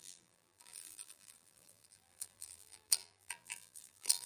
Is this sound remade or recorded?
remade